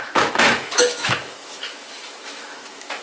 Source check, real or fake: fake